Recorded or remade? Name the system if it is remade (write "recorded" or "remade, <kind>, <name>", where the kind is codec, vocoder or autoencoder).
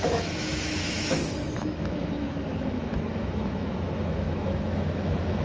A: remade, autoencoder, DAC-VAE